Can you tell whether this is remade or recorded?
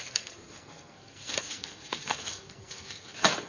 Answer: remade